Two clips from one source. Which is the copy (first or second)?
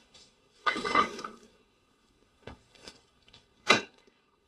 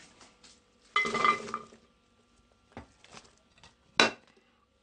first